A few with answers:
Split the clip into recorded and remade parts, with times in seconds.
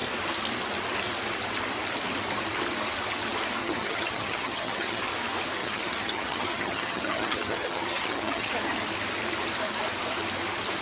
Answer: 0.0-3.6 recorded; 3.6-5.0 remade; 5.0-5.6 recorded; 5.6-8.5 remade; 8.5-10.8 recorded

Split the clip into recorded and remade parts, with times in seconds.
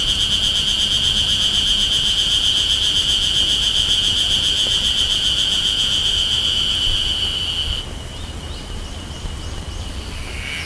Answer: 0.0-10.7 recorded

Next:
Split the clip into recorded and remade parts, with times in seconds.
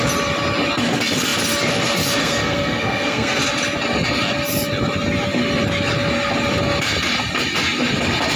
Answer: 0.0-2.2 recorded; 2.2-3.4 remade; 3.4-8.4 recorded